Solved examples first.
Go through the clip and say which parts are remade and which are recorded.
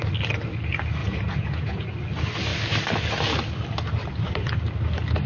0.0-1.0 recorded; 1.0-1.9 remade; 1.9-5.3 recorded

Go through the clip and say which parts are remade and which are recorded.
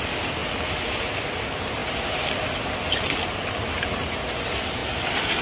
0.0-5.4 recorded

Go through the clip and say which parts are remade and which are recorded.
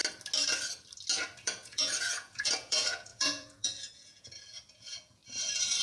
0.0-1.4 recorded; 1.4-5.2 remade; 5.2-5.8 recorded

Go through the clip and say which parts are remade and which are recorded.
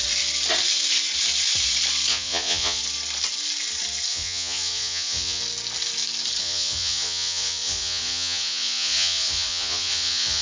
0.0-2.1 recorded; 2.1-2.8 remade; 2.8-4.1 recorded; 4.1-5.4 remade; 5.4-6.4 recorded; 6.4-10.4 remade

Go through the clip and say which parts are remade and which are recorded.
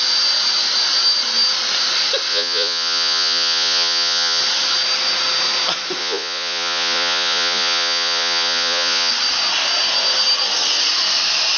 0.0-2.3 recorded; 2.3-4.4 remade; 4.4-6.0 recorded; 6.0-9.1 remade; 9.1-11.6 recorded